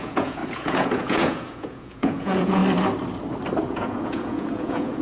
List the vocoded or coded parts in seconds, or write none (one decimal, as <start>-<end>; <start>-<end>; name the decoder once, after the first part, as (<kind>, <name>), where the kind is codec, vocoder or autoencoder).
0.0-2.6 (vocoder, Vocos); 3.6-5.0